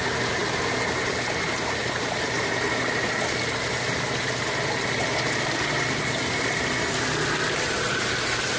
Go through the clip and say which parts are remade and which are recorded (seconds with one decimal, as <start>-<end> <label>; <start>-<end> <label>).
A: 0.0-8.6 recorded